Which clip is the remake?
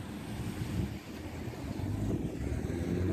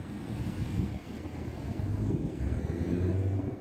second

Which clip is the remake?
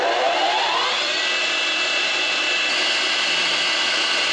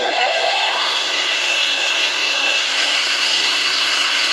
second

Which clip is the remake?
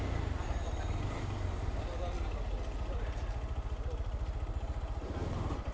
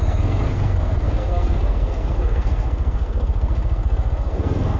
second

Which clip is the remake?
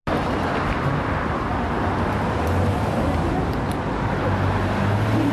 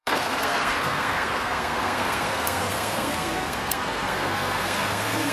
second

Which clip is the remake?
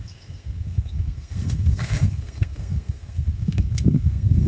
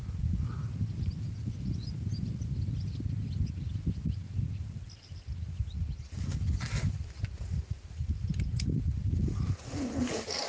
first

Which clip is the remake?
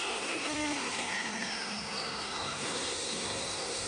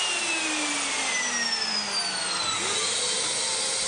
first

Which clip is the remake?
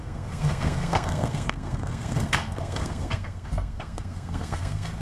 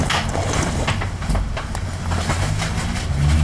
first